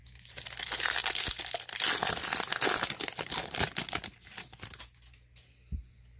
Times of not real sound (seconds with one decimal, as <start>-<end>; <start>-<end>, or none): none